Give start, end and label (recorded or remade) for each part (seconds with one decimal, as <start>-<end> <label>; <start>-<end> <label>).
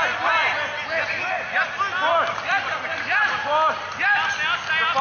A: 0.0-2.1 recorded; 2.1-3.9 remade; 3.9-5.0 recorded